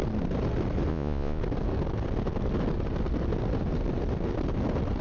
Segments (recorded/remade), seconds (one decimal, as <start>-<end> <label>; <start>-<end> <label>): 0.0-0.9 recorded; 0.9-1.4 remade; 1.4-5.0 recorded